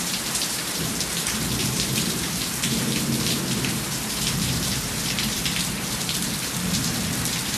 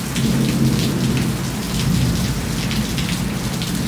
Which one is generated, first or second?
first